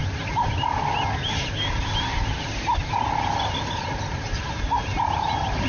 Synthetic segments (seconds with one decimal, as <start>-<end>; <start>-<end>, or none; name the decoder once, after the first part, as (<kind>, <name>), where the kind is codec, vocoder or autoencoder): none

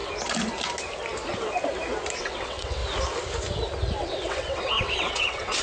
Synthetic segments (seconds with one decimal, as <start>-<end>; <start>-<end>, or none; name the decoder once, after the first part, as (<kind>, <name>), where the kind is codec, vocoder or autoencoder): 2.2-2.8 (vocoder, WaveNeXt); 4.0-5.6

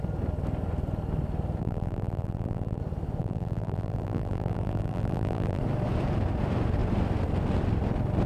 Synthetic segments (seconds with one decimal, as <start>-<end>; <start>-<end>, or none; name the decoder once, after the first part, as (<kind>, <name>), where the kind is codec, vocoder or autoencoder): 1.6-2.8 (vocoder, BigVGAN v2); 3.2-5.6

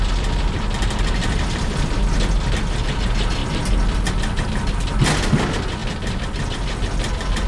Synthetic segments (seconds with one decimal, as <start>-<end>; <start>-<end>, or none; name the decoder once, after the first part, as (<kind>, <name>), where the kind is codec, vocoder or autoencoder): none

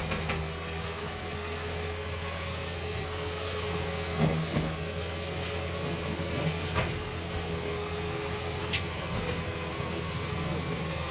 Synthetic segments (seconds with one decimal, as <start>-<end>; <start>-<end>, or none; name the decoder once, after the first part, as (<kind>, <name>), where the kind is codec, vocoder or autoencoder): 0.0-11.1 (codec, SNAC)

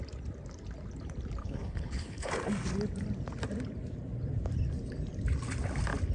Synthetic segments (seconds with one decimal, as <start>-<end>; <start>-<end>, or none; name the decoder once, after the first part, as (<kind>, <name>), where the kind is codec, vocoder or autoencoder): 1.4-2.3 (codec, HILCodec)